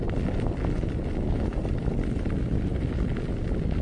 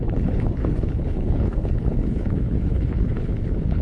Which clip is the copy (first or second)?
second